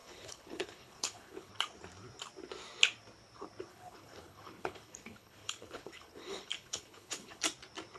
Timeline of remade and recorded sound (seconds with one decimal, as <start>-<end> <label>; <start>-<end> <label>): 0.0-1.5 remade; 1.5-3.7 recorded; 3.7-7.4 remade; 7.4-8.0 recorded